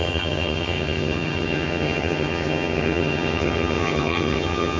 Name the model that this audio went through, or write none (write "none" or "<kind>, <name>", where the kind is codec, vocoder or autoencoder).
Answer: vocoder, HiFi-GAN